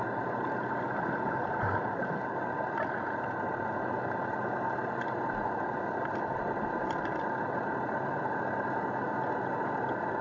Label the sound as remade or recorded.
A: recorded